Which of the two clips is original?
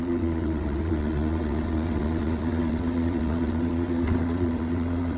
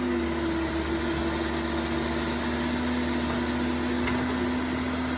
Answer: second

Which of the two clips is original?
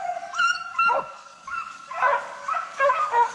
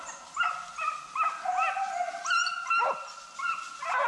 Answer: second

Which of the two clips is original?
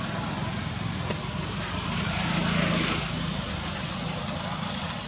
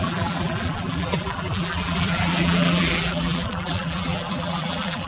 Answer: first